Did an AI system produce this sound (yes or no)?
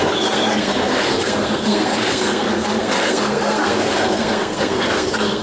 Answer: yes